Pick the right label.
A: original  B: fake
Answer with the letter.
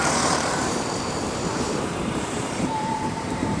B